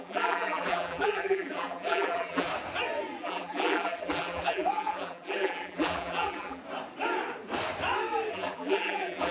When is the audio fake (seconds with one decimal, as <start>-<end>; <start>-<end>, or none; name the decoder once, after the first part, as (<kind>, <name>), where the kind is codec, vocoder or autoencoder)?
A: 0.0-2.5 (vocoder, BigVGAN v2); 3.2-6.6; 8.3-9.3